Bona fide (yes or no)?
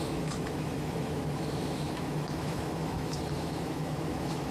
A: no